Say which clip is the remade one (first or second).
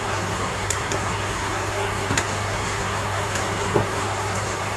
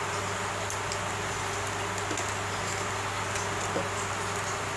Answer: first